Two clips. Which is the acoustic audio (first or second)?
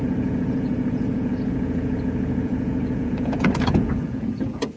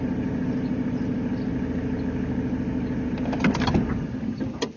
second